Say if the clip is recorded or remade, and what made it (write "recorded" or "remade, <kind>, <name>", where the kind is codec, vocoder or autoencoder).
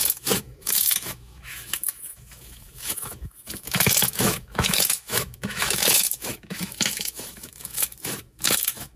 remade, autoencoder, DAC-VAE